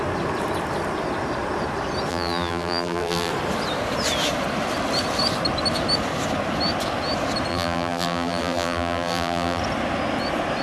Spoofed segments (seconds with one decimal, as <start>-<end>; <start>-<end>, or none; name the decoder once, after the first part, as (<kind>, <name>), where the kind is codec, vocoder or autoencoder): 2.1-3.3 (vocoder, BigVGAN v2); 7.5-9.6